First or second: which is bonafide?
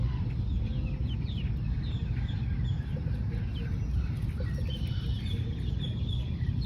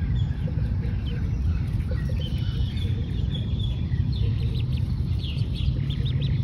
first